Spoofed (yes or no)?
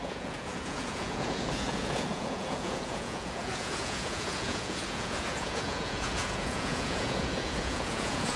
yes